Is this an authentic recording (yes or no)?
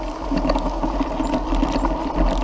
yes